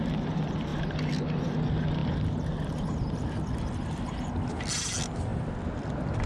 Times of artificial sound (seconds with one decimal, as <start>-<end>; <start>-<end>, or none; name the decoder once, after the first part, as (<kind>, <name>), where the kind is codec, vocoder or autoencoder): none